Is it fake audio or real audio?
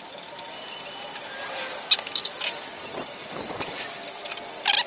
real